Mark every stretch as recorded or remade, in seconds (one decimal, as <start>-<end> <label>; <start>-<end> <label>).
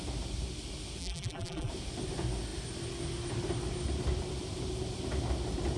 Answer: 0.0-1.0 recorded; 1.0-1.7 remade; 1.7-5.8 recorded